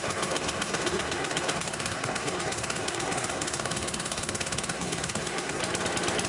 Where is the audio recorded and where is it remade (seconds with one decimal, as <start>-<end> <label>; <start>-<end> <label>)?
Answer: 0.0-5.6 remade; 5.6-6.3 recorded